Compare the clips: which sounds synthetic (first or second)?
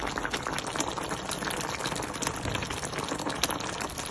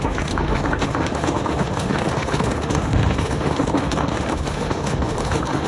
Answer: second